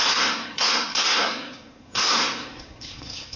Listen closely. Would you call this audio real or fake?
fake